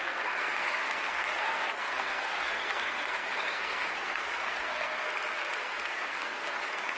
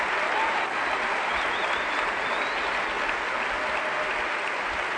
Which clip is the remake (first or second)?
first